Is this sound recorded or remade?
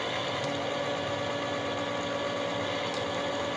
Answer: recorded